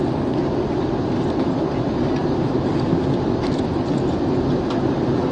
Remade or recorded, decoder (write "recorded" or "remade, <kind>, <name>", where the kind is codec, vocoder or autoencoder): recorded